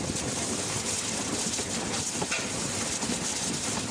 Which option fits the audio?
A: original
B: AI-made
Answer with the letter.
A